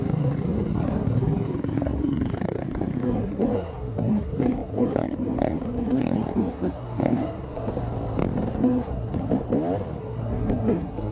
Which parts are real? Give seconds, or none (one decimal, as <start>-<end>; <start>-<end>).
7.7-8.5; 9.3-10.0